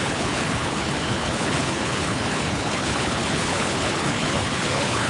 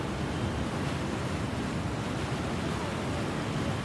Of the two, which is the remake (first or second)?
first